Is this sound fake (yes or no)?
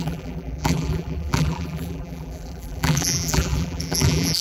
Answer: yes